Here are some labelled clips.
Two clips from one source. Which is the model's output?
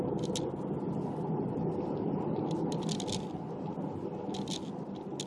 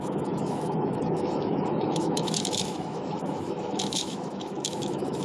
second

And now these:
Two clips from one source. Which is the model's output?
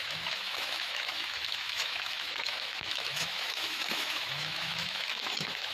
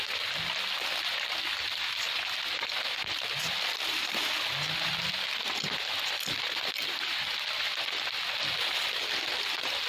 first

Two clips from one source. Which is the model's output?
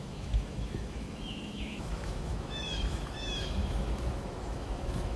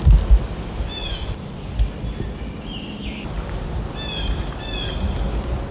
first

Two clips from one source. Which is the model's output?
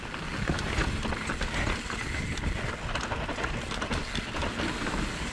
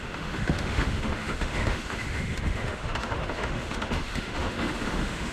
second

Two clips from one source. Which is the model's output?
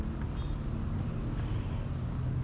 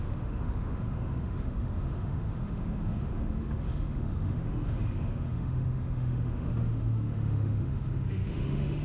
second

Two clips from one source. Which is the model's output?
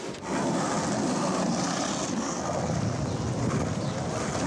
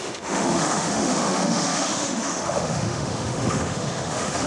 second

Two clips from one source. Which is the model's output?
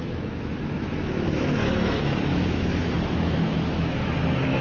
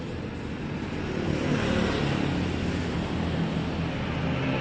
first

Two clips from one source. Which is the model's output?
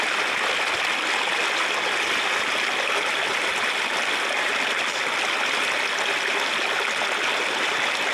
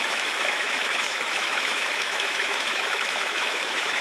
second